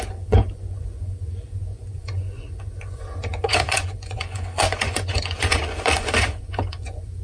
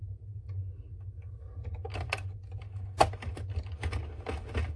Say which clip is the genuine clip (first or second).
second